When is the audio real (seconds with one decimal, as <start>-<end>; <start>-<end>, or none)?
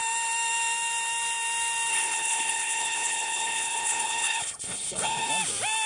0.0-1.9; 5.3-5.9